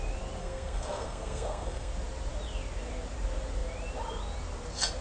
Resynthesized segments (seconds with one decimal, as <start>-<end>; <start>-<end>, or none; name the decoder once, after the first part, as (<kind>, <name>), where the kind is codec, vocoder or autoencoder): 0.4-1.9 (codec, SNAC)